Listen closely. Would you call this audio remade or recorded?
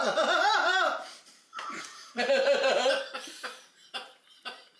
remade